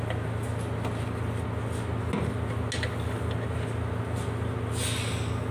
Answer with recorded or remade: recorded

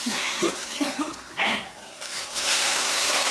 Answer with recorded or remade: remade